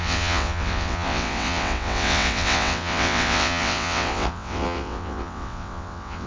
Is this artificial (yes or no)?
yes